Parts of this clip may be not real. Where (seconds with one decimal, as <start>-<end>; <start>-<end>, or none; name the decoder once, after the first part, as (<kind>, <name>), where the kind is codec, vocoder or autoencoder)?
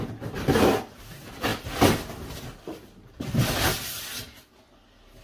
none